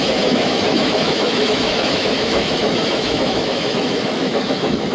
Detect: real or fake fake